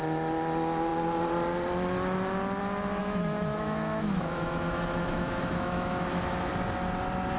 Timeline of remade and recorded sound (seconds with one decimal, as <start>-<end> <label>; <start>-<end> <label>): 0.0-3.0 recorded; 3.0-6.5 remade; 6.5-7.4 recorded